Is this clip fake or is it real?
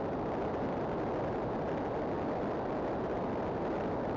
real